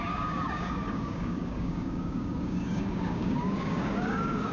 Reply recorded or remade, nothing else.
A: remade